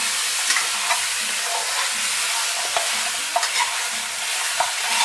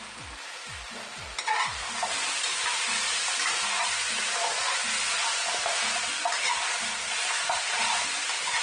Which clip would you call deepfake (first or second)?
second